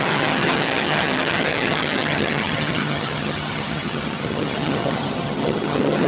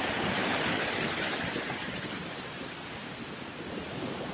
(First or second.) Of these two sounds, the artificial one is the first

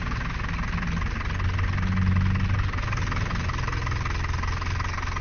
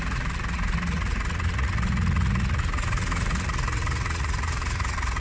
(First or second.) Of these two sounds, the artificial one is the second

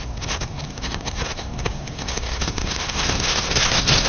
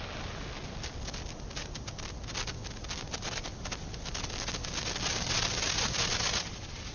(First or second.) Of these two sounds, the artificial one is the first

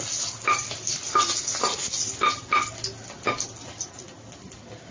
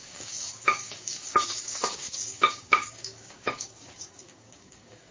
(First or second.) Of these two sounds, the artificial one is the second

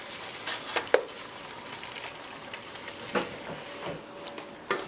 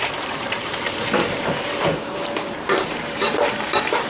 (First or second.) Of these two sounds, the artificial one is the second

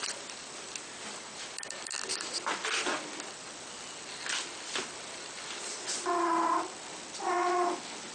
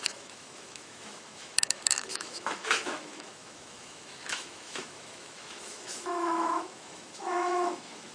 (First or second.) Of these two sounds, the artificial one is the second